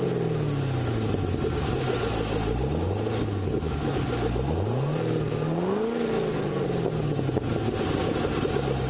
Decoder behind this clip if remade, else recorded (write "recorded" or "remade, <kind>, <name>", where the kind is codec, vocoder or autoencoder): recorded